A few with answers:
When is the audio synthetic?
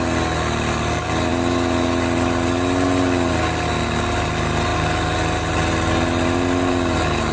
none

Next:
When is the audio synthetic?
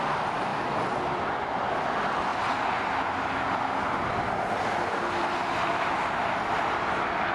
none